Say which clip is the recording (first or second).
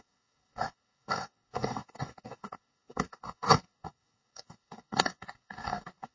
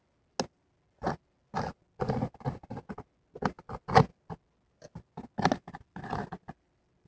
second